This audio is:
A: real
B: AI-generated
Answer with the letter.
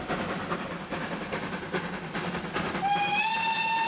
A